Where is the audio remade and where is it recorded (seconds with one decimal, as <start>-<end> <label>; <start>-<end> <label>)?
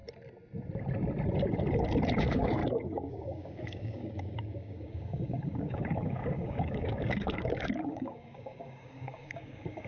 0.0-2.2 recorded; 2.2-2.6 remade; 2.6-3.1 recorded; 3.1-9.9 remade